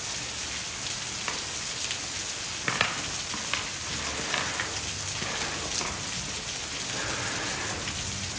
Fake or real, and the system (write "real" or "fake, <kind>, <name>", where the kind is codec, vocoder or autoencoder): real